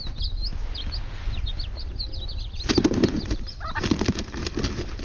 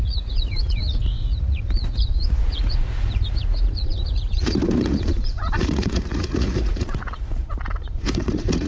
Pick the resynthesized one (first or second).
second